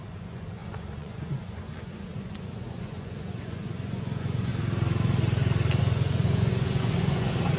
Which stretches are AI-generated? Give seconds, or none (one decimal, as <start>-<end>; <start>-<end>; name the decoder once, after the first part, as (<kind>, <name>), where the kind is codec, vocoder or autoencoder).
0.0-4.5 (vocoder, Vocos); 5.8-7.6